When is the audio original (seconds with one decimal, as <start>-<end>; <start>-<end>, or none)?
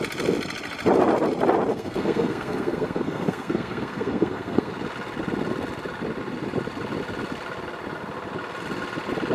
0.0-1.7; 4.7-9.3